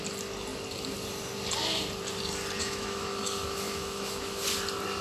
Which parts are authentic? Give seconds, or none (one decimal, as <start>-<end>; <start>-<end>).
0.0-2.6; 4.4-5.0